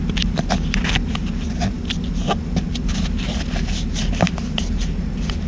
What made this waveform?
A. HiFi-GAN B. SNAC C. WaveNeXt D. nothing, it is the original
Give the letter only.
D